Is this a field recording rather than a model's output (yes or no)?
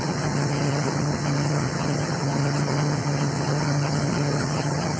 no